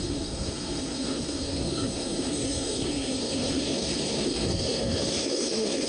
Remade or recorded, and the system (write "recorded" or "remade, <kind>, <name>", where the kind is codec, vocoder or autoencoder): remade, codec, SNAC